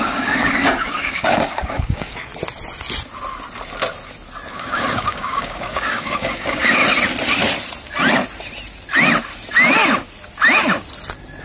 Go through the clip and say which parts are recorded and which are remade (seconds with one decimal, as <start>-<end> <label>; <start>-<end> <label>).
0.0-2.3 remade; 2.3-4.5 recorded; 4.5-6.8 remade; 6.8-11.4 recorded